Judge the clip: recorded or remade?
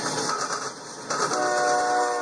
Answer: recorded